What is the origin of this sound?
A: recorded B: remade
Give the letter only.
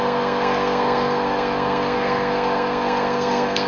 B